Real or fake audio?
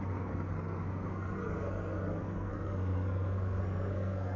fake